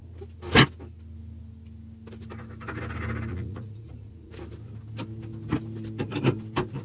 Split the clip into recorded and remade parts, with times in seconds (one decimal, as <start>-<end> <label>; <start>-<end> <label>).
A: 0.0-3.3 recorded; 3.3-4.3 remade; 4.3-6.8 recorded